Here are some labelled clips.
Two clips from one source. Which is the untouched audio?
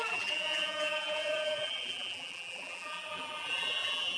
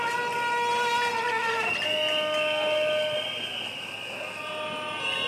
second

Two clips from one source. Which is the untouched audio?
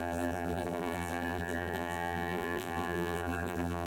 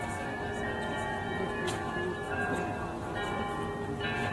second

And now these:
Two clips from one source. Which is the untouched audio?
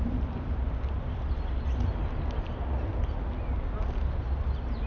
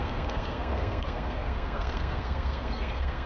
first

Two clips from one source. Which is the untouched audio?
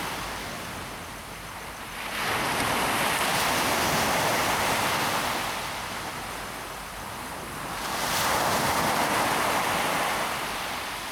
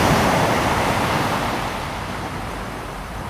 first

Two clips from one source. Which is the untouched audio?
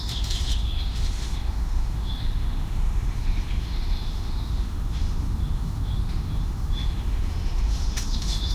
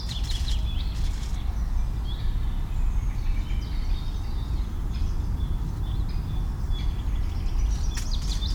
second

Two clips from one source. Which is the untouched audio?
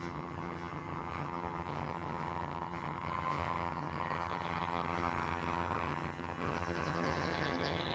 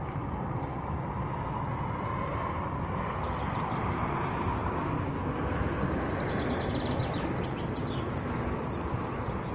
second